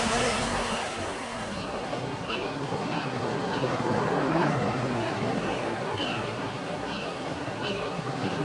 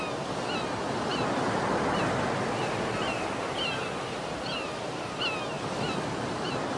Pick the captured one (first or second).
second